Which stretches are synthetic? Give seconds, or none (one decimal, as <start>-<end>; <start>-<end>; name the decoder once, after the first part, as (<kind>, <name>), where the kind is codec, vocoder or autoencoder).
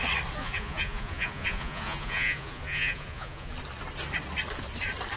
0.4-3.5 (vocoder, Vocos)